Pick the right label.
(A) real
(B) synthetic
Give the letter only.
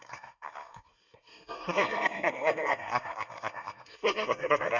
B